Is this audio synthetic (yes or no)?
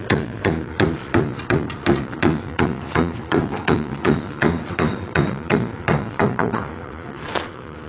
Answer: yes